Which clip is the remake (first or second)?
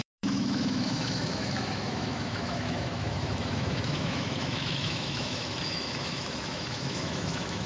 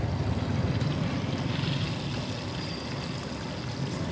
first